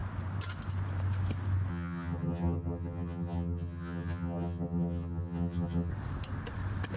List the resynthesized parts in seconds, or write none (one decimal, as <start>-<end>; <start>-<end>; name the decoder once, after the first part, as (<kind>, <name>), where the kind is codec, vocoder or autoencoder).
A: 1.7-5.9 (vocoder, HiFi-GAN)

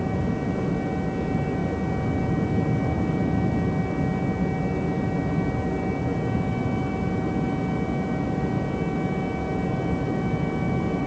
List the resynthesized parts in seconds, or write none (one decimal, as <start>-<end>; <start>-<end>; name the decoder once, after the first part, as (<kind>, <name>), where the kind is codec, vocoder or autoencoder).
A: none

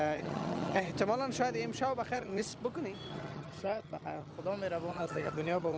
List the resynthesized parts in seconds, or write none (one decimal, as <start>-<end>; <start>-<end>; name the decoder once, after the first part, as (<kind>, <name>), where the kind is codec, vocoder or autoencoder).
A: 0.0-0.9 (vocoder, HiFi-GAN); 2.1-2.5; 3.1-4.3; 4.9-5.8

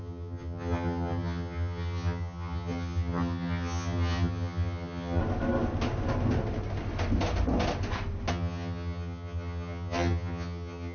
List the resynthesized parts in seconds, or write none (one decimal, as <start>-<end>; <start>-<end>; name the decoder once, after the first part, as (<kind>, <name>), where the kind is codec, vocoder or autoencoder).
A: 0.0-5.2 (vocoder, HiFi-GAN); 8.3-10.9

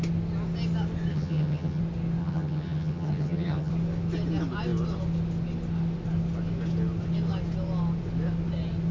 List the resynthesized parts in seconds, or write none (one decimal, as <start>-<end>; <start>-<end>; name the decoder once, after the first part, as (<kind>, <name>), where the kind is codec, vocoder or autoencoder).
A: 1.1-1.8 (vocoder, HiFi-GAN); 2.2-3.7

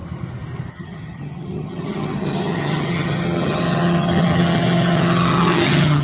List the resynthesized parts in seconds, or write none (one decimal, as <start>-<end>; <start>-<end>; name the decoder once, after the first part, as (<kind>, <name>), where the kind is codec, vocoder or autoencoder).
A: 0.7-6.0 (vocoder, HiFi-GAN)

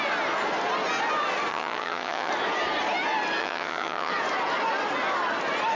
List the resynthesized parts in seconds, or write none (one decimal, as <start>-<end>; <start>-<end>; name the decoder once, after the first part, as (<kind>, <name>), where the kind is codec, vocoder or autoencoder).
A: 1.5-2.3 (vocoder, HiFi-GAN); 3.4-4.1

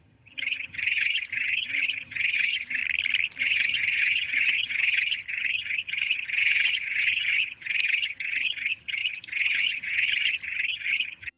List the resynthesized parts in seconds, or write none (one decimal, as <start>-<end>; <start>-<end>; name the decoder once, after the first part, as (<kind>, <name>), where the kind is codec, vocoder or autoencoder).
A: 0.0-2.8 (vocoder, HiFi-GAN); 3.4-11.4